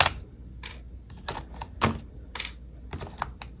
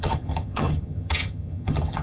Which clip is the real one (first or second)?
first